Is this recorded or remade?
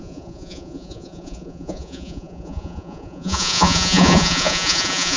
remade